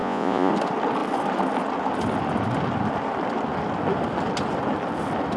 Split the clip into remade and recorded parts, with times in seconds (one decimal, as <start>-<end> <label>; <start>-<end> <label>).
0.0-0.5 remade; 0.5-5.4 recorded